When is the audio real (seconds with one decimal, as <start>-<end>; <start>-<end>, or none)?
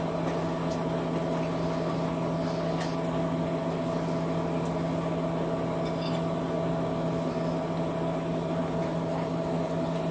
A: 0.0-10.1